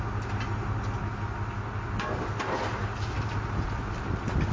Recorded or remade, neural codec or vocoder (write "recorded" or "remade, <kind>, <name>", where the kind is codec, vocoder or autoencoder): recorded